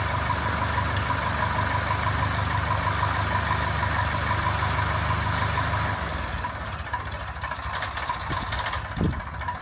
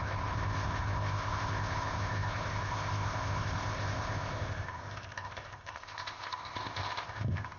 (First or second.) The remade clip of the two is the second